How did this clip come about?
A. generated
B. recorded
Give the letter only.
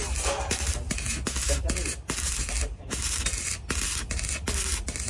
B